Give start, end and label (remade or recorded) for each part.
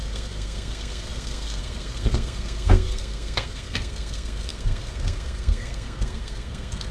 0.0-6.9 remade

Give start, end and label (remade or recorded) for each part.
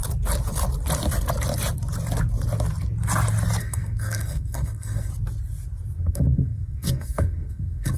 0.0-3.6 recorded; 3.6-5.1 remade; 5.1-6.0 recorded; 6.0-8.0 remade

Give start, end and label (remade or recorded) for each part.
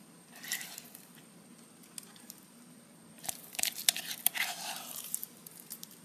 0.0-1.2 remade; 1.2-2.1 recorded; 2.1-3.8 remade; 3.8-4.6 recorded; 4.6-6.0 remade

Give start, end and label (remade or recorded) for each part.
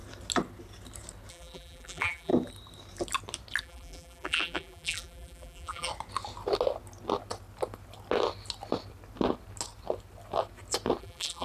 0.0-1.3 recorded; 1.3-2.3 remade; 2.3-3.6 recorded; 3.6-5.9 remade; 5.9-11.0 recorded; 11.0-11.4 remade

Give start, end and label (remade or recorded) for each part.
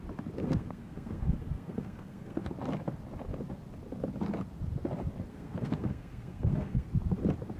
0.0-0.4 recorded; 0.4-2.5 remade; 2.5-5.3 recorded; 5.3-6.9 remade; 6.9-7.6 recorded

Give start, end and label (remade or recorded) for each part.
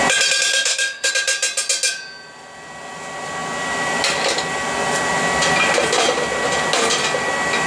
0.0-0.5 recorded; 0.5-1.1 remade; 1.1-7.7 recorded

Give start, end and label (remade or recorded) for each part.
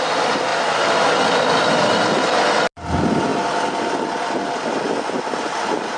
0.0-0.5 recorded; 0.5-2.0 remade; 2.0-3.3 recorded; 3.3-4.1 remade; 4.1-6.0 recorded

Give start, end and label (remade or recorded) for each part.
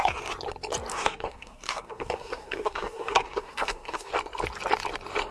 0.0-0.9 recorded; 0.9-4.1 remade; 4.1-5.3 recorded